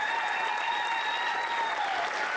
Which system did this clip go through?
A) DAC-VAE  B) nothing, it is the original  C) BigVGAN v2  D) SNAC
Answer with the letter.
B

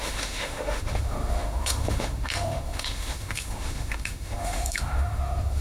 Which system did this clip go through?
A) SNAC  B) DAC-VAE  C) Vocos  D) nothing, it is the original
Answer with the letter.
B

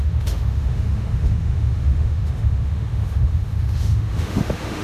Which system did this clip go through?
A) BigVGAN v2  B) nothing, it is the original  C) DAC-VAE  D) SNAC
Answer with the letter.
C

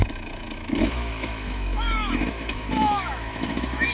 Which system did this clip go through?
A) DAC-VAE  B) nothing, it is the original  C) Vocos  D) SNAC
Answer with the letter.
A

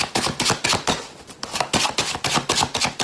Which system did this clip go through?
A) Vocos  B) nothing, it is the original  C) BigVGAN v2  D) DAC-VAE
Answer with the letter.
B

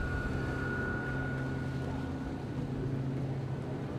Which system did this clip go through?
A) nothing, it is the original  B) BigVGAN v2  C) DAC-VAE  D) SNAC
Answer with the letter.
A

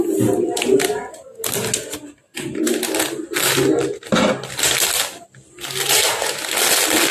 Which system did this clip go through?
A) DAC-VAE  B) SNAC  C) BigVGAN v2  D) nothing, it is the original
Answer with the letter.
D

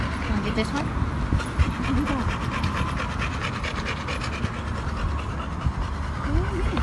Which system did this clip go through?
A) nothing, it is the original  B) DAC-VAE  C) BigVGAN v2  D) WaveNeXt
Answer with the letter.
A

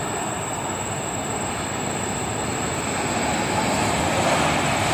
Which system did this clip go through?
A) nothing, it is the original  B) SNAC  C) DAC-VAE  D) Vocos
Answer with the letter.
A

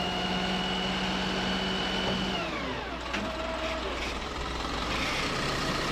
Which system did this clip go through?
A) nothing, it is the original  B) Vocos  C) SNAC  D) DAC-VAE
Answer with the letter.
A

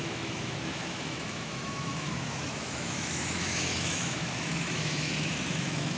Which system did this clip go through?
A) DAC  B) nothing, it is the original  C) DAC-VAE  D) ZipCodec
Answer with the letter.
C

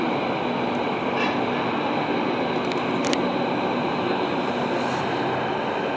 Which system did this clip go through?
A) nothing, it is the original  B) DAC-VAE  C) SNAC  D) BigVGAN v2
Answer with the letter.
A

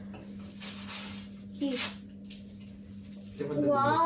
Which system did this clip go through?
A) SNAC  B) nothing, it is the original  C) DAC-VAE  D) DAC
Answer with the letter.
B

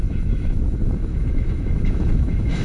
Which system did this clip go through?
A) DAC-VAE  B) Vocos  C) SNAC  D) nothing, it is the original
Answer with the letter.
A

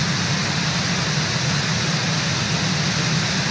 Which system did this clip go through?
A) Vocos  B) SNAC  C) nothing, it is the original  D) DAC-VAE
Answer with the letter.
C